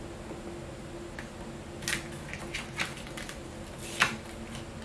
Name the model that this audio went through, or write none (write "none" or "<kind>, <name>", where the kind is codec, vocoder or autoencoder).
none